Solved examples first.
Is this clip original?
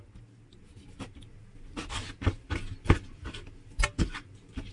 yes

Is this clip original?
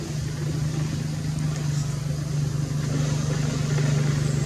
yes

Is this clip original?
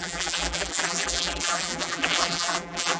no